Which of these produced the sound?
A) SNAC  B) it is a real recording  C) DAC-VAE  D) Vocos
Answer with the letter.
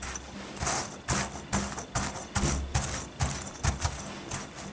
B